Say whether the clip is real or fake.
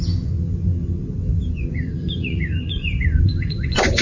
fake